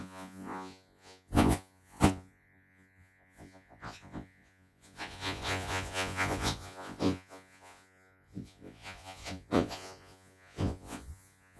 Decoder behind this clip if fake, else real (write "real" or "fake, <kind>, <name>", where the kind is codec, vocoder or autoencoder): fake, vocoder, Vocos